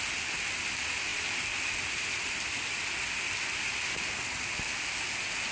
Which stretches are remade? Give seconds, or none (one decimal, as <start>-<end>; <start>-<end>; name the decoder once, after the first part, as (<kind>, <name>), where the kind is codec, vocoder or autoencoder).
none